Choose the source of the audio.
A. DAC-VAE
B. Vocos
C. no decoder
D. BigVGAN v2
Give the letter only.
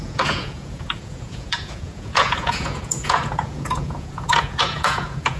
B